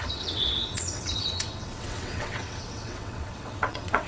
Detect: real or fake fake